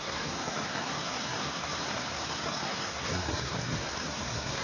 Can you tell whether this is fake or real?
fake